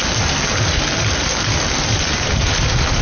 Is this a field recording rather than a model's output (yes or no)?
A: yes